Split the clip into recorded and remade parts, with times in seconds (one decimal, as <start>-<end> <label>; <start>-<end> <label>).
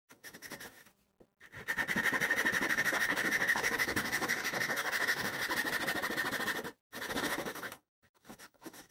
0.0-0.9 remade; 0.9-2.7 recorded; 2.7-5.4 remade; 5.4-7.1 recorded; 7.1-8.9 remade